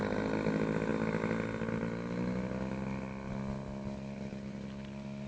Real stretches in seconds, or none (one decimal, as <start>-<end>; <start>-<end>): 0.0-5.3